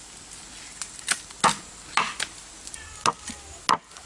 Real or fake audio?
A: real